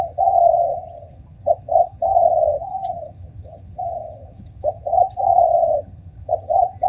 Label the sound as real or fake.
fake